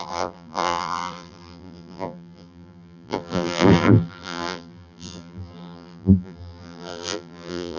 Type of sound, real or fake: fake